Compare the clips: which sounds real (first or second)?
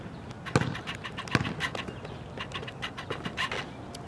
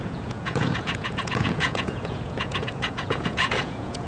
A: first